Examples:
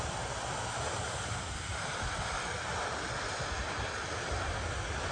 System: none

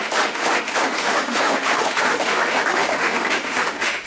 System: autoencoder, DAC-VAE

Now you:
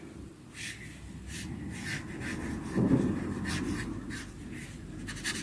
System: none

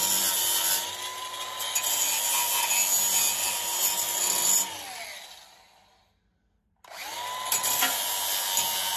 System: none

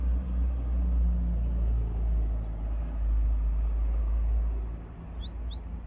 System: none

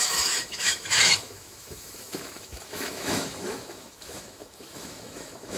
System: autoencoder, DAC-VAE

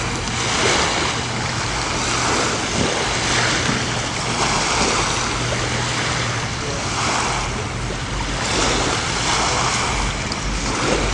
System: none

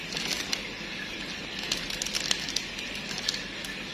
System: none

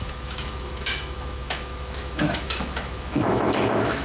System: autoencoder, DAC-VAE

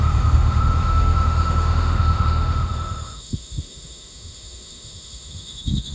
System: autoencoder, DAC-VAE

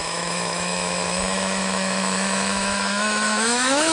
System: autoencoder, DAC-VAE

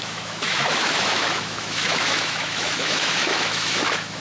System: autoencoder, DAC-VAE